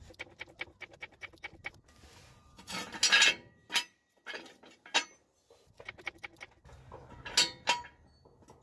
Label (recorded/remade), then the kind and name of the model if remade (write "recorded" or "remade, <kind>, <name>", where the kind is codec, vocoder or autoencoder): recorded